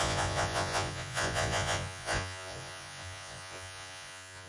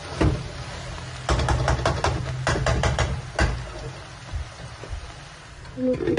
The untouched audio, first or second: second